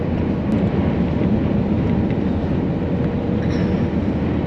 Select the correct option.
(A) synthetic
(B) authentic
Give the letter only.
B